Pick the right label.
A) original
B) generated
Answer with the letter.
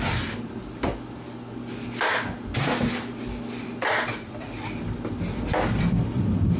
A